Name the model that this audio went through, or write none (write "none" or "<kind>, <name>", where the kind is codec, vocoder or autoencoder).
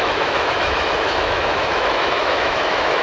autoencoder, DAC-VAE